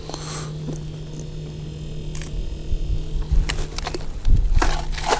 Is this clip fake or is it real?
real